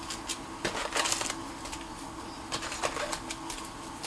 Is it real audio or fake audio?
real